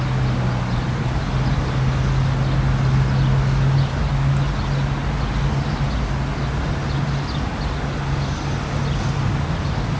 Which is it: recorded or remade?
recorded